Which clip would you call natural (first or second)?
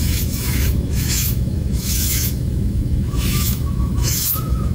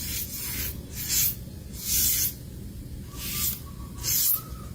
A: second